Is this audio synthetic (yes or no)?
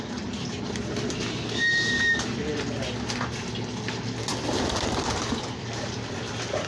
no